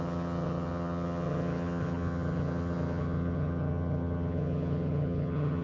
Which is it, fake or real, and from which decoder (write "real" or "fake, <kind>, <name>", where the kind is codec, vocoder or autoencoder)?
fake, vocoder, HiFi-GAN